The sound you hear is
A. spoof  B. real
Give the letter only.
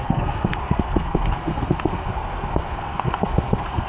A